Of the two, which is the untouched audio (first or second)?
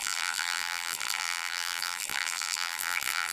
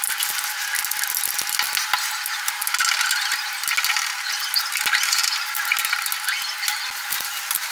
second